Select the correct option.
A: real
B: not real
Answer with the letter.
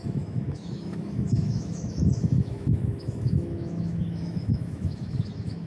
B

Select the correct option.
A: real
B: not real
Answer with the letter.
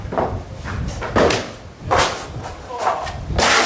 A